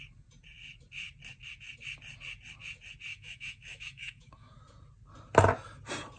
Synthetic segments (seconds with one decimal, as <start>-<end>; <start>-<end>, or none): 3.1-4.6